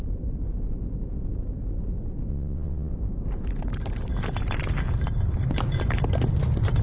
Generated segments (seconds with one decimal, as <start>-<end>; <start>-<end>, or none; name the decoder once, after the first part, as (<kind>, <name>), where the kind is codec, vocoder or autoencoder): 2.3-2.9 (vocoder, WaveNeXt)